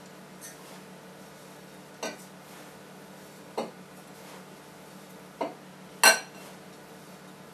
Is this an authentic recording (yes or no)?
yes